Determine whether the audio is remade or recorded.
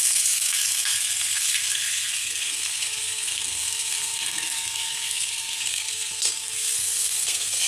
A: remade